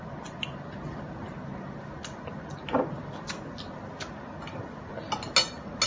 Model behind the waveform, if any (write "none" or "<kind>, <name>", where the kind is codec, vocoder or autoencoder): none